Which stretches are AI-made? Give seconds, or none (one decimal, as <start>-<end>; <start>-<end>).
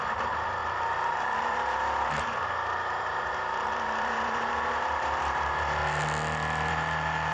0.0-5.8; 6.7-7.3